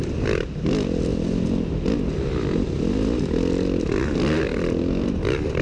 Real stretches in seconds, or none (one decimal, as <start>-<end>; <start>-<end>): 0.0-5.6